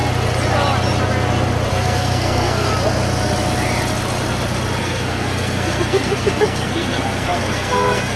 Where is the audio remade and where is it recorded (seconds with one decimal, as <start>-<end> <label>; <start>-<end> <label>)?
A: 0.0-1.7 recorded; 1.7-2.7 remade; 2.7-4.8 recorded; 4.8-8.2 remade